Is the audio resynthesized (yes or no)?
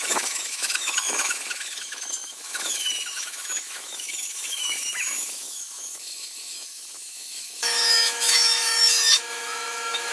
yes